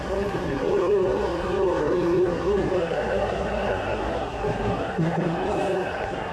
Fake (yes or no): yes